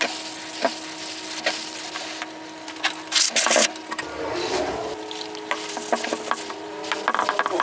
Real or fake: real